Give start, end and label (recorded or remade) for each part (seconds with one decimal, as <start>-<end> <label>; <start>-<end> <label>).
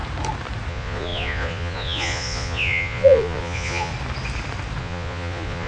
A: 0.0-0.7 recorded; 0.7-3.9 remade; 3.9-4.8 recorded; 4.8-5.7 remade